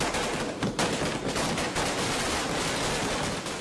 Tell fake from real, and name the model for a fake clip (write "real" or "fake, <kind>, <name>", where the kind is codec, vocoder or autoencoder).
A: real